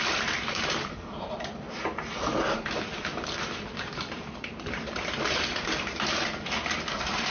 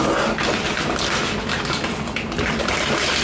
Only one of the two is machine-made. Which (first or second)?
first